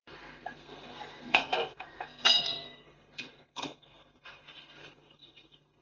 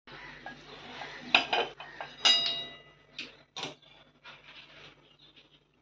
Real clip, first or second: second